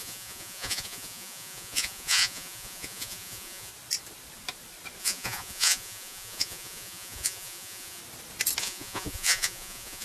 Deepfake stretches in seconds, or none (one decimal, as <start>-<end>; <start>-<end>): 0.0-3.7; 5.0-8.0; 8.6-10.0